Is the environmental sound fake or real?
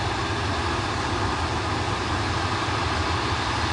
real